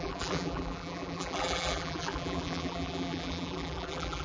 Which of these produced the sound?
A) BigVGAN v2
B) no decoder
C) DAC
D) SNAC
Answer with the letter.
A